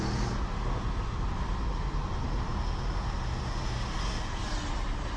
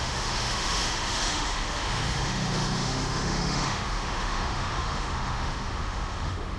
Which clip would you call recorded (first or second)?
first